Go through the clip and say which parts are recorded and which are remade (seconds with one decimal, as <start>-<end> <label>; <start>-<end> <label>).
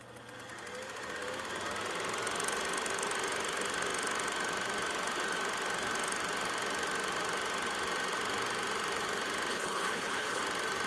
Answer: 0.0-9.5 recorded; 9.5-10.4 remade; 10.4-10.9 recorded